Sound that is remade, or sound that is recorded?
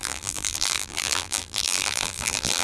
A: remade